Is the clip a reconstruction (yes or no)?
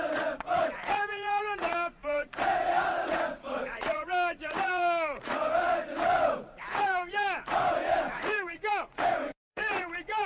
yes